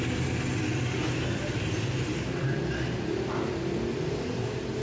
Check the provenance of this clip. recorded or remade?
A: recorded